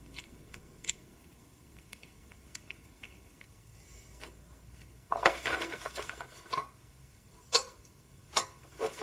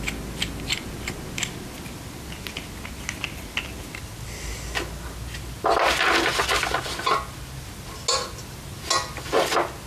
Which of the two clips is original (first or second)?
second